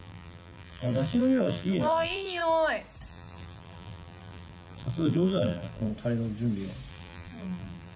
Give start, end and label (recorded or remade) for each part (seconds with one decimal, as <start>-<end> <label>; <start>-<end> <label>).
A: 0.0-2.4 remade; 2.4-3.1 recorded; 3.1-5.9 remade; 5.9-6.9 recorded; 6.9-8.0 remade